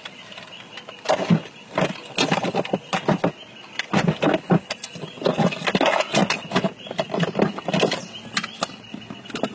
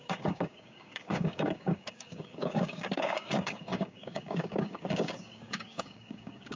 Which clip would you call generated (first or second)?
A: second